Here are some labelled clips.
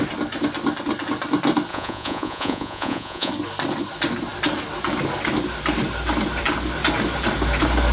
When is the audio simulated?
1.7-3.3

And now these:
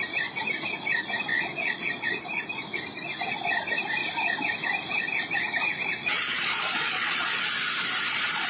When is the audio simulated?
1.3-2.2; 6.0-7.4